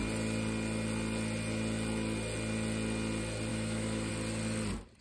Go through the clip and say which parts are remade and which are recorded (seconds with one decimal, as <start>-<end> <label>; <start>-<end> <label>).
0.0-3.5 recorded; 3.5-4.1 remade; 4.1-5.0 recorded